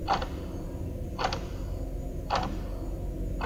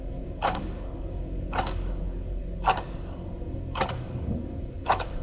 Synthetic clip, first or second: second